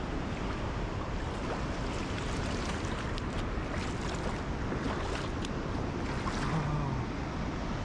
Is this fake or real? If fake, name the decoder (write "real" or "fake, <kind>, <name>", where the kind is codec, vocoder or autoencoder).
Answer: real